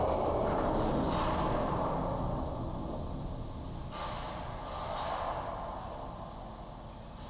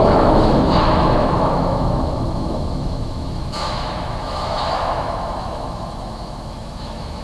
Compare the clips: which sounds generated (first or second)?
second